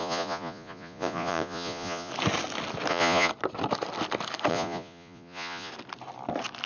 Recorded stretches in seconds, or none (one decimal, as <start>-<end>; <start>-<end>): 2.1-2.9; 3.3-4.5; 5.7-6.7